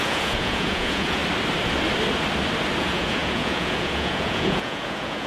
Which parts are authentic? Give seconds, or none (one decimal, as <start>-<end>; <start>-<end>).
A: 1.2-2.8